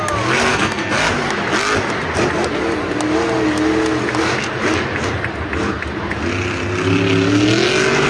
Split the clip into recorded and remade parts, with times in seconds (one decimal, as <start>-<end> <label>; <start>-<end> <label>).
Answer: 0.0-0.5 recorded; 0.5-1.0 remade; 1.0-8.1 recorded